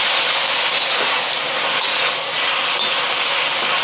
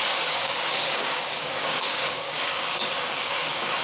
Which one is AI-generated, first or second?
second